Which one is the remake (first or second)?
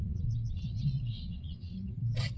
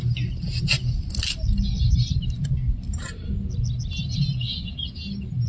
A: first